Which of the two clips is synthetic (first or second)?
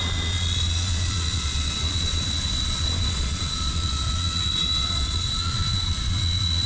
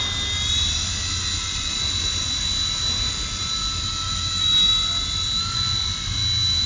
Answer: first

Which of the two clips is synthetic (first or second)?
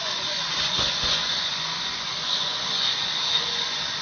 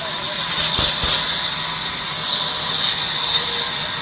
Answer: first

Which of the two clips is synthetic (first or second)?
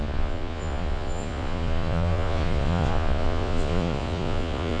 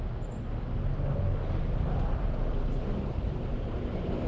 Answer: first